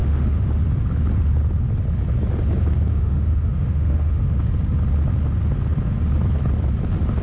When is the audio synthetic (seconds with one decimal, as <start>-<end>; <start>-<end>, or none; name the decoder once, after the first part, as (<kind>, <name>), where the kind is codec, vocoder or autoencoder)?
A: 0.0-0.5 (autoencoder, DAC-VAE); 2.9-4.4